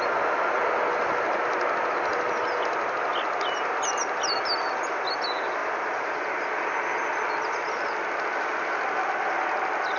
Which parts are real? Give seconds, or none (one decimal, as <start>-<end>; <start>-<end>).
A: 0.0-10.0